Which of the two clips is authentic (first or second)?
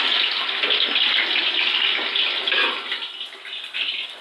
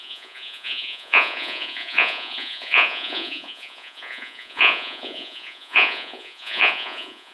first